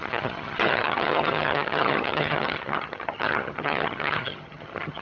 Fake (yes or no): yes